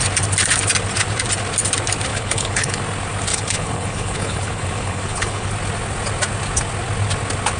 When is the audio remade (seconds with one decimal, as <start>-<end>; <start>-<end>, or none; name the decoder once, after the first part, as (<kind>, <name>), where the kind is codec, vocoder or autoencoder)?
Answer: 2.1-2.8 (codec, HILCodec); 3.3-5.5